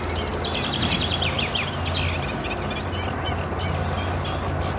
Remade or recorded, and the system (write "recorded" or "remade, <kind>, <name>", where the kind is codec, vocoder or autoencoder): recorded